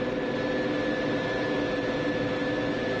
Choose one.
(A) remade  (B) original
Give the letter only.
B